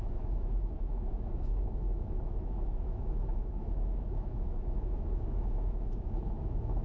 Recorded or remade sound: remade